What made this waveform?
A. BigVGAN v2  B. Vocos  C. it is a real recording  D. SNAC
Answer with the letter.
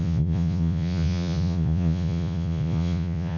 B